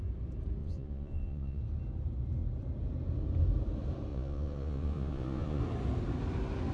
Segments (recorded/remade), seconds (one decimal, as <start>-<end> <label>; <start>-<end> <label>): 0.0-0.6 recorded; 0.6-1.6 remade; 1.6-4.1 recorded; 4.1-5.6 remade; 5.6-6.7 recorded